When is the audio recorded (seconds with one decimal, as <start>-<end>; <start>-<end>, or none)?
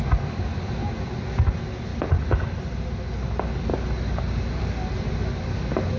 0.0-6.0